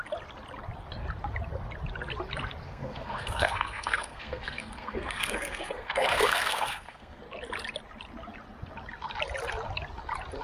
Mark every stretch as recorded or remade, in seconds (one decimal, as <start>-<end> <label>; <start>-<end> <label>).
0.0-2.6 recorded; 2.6-7.2 remade; 7.2-10.4 recorded